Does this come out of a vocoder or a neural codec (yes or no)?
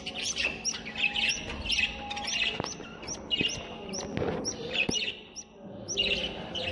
no